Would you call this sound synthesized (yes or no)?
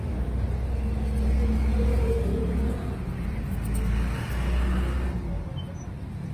no